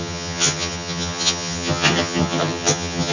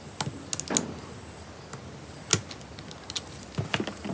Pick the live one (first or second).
second